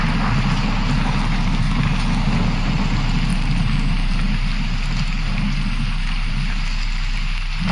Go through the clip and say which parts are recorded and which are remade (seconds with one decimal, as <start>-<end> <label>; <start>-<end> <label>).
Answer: 0.0-7.7 recorded